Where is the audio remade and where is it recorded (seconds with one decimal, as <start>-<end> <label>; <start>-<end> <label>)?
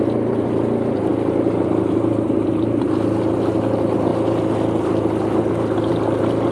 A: 0.0-6.5 recorded